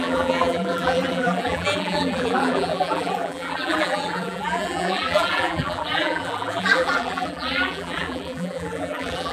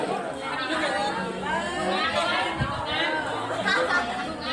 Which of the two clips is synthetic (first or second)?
first